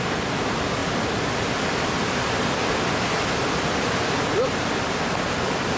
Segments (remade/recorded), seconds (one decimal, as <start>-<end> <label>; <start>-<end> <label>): 0.0-5.8 recorded